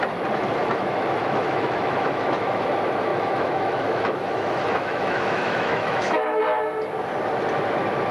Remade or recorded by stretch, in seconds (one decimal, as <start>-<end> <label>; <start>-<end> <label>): 0.0-0.6 recorded; 0.6-2.6 remade; 2.6-3.1 recorded; 3.1-6.4 remade; 6.4-8.1 recorded